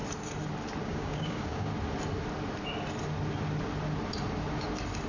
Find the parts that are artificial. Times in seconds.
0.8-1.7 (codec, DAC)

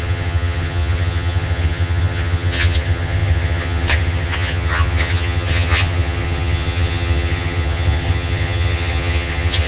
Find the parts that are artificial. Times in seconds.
0.0-9.7 (vocoder, HiFi-GAN)

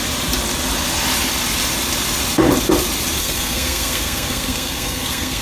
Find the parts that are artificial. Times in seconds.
3.2-5.4 (codec, SNAC)